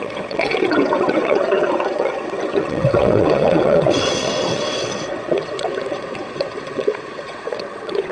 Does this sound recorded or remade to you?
remade